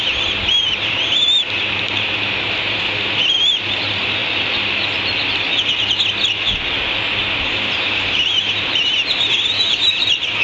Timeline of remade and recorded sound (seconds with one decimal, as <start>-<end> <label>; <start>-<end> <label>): 0.0-4.2 remade; 4.2-7.2 recorded; 7.2-10.4 remade